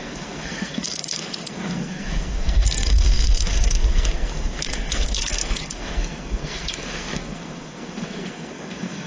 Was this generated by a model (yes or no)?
yes